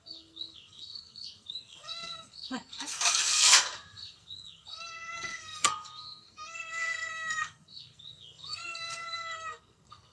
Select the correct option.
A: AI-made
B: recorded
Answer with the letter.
A